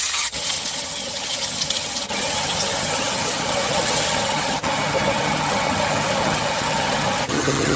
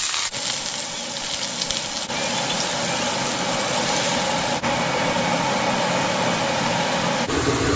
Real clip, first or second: second